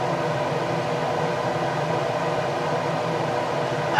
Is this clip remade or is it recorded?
recorded